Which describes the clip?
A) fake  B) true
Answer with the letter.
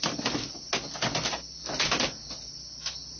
B